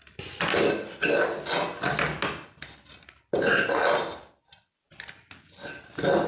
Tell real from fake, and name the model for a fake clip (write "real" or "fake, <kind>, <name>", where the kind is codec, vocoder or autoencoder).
real